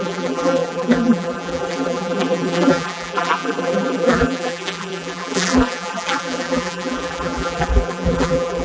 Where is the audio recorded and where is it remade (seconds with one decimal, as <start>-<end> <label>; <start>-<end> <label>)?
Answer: 0.0-8.6 remade